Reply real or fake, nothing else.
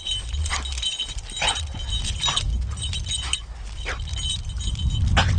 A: real